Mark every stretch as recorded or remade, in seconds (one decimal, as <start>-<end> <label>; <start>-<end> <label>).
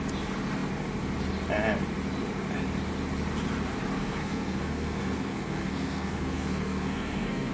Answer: 0.0-4.0 recorded; 4.0-7.5 remade